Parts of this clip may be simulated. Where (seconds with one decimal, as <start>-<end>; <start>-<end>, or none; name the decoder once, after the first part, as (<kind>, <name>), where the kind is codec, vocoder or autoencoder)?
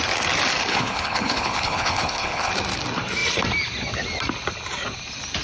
0.7-2.5 (codec, HILCodec)